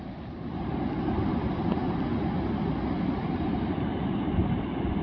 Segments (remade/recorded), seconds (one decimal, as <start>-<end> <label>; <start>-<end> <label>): 0.0-1.8 remade; 1.8-5.0 recorded

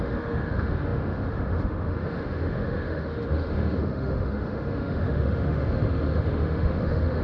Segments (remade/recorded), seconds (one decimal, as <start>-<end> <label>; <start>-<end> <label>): 0.0-7.2 remade

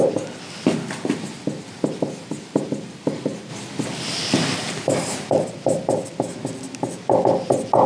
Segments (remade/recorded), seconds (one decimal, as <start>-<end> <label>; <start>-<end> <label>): 0.0-7.9 recorded

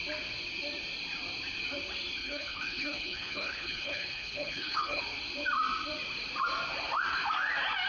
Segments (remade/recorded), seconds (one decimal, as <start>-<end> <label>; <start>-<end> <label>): 0.0-2.2 recorded; 2.2-5.0 remade; 5.0-7.9 recorded